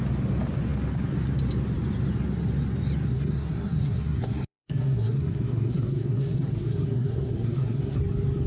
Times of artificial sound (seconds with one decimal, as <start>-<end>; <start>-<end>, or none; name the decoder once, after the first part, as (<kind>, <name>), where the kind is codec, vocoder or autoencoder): 3.1-8.0 (codec, SNAC)